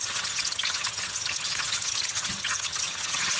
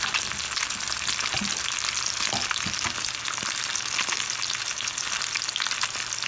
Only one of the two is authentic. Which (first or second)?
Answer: second